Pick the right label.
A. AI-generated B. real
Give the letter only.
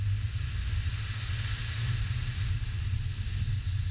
B